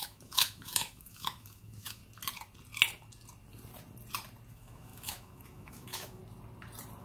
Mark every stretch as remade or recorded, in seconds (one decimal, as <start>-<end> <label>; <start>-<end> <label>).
0.0-2.0 remade; 2.0-4.5 recorded; 4.5-6.2 remade; 6.2-7.0 recorded